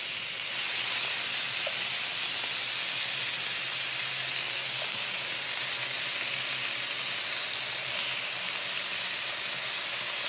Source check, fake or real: real